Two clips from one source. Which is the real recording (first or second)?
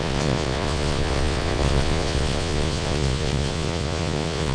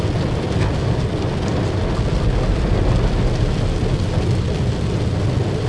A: second